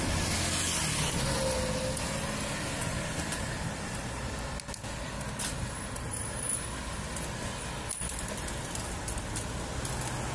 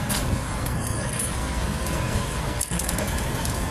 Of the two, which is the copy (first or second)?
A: second